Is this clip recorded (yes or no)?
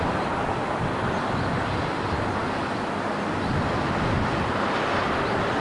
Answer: yes